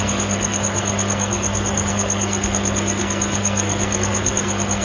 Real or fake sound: fake